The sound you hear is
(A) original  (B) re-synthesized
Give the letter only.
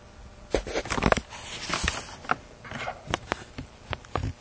A